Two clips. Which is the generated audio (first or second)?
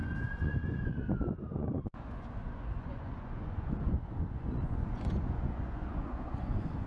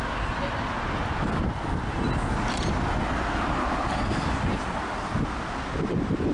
first